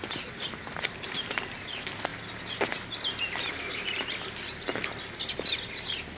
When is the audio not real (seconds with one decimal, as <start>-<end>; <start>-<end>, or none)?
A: none